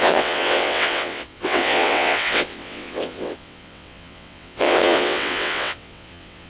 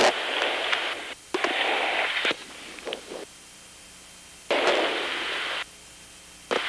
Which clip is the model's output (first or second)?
first